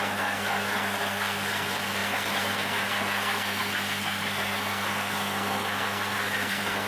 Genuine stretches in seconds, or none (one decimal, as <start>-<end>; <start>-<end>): none